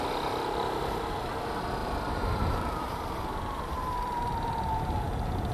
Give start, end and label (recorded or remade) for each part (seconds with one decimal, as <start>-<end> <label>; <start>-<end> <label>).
0.0-1.8 recorded; 1.8-3.9 remade; 3.9-5.5 recorded